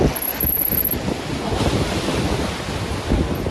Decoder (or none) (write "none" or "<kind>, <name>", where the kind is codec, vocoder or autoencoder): none